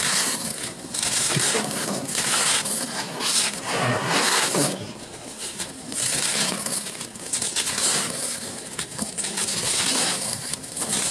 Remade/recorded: remade